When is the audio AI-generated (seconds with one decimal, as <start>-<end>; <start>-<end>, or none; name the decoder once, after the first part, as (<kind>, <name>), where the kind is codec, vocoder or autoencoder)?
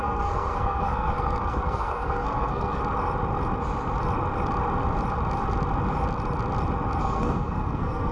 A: 0.0-2.8 (codec, SNAC); 7.0-8.1